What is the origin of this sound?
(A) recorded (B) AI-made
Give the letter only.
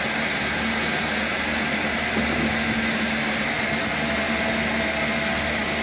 A